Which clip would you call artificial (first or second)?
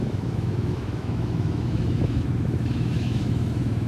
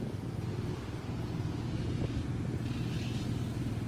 first